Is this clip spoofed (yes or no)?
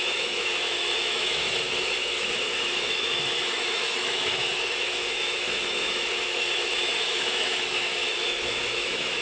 yes